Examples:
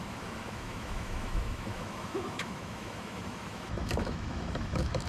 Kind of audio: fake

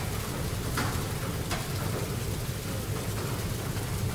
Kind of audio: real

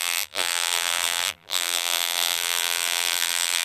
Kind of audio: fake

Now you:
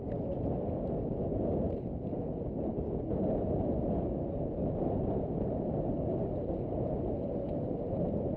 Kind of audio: real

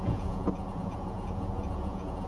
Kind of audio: fake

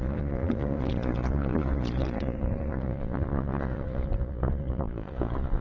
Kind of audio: fake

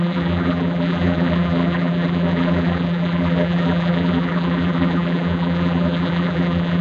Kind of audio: fake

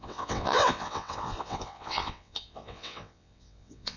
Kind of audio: fake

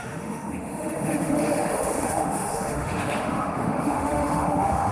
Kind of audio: fake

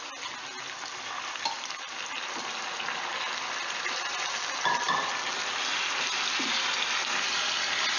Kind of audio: real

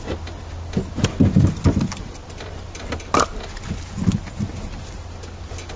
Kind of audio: real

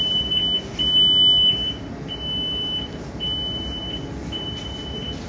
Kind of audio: real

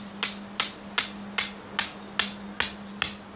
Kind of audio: real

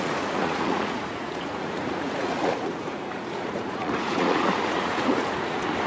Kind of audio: fake